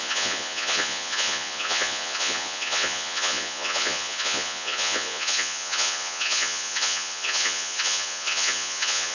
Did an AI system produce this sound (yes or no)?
yes